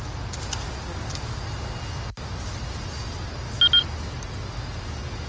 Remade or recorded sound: recorded